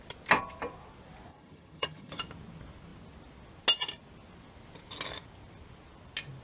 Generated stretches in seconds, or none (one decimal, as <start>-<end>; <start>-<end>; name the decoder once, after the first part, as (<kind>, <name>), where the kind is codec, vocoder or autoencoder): 1.3-2.2 (vocoder, HiFi-GAN)